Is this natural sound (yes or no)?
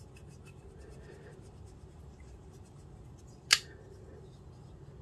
yes